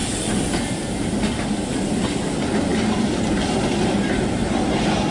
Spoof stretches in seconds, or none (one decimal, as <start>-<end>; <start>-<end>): none